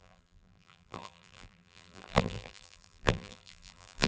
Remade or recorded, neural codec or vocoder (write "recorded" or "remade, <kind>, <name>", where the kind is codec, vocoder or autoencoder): remade, vocoder, BigVGAN v2